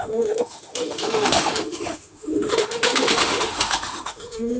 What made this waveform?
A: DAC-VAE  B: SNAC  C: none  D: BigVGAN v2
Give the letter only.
A